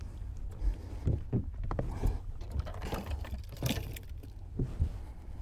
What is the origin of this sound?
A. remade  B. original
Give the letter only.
B